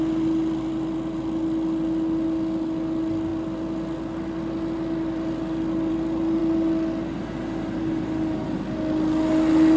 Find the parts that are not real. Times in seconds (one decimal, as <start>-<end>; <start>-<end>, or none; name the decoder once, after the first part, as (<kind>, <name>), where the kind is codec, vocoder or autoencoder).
none